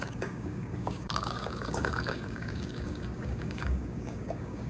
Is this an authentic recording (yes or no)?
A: no